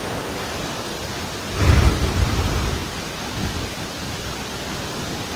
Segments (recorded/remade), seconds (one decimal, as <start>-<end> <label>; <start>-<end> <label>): 0.0-5.4 recorded